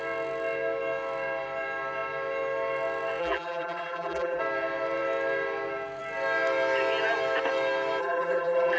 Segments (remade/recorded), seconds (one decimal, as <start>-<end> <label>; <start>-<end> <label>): 0.0-3.2 recorded; 3.2-4.4 remade; 4.4-8.0 recorded; 8.0-8.8 remade